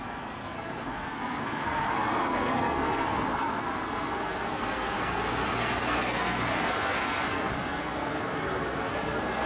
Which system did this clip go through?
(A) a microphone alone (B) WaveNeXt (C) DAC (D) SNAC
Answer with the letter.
D